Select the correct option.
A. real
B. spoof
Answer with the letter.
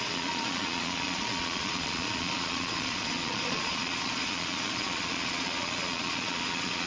B